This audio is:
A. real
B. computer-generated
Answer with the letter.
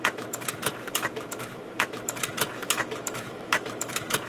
B